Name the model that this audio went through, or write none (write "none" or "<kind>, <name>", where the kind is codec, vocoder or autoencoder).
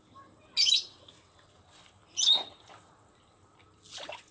none